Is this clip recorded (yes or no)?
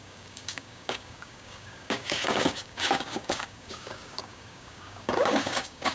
no